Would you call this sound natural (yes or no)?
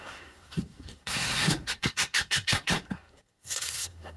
no